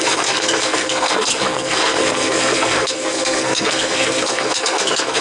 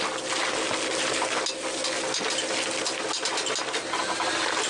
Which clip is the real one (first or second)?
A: second